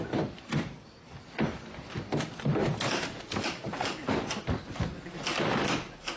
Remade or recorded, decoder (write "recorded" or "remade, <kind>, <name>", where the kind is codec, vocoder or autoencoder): recorded